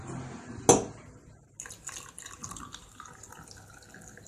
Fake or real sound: real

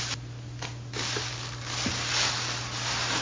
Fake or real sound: real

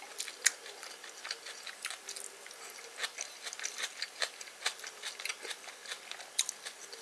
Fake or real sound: real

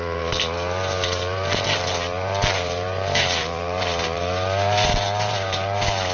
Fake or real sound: fake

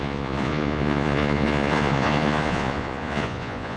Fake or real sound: fake